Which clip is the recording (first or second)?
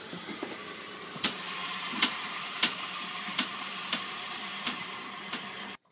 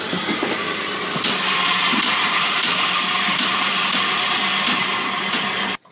second